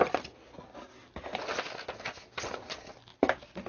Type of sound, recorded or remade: recorded